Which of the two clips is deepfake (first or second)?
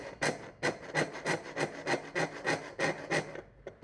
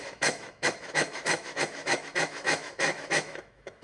second